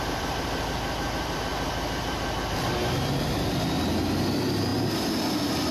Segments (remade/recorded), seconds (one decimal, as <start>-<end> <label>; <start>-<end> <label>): 0.0-4.7 remade; 4.7-5.7 recorded